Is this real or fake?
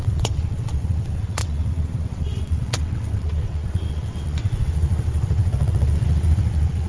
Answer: fake